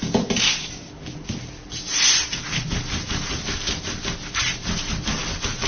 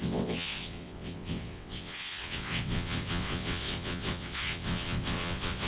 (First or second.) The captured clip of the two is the first